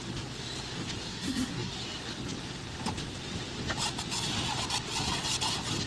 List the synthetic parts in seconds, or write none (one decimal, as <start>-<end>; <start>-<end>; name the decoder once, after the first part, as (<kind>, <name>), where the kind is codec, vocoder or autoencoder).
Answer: 1.1-1.7 (codec, SNAC)

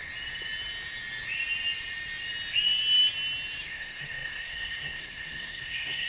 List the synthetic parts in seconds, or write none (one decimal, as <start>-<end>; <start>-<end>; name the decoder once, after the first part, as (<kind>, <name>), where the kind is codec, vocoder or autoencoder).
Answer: 3.7-6.1 (codec, SNAC)